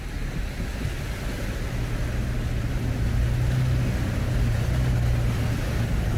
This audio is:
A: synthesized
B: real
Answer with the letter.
B